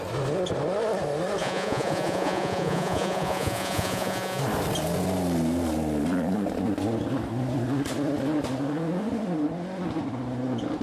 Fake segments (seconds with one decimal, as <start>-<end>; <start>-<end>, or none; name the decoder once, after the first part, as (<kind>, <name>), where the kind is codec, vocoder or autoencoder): 1.4-4.4 (vocoder, Vocos)